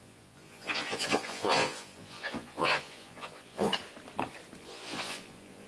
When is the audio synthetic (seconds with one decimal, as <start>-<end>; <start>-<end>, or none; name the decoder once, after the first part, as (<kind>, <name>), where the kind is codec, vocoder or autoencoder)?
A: 0.0-3.7 (vocoder, Vocos); 4.6-5.7